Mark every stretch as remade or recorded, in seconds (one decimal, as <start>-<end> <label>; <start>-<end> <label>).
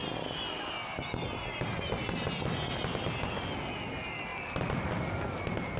0.0-5.8 recorded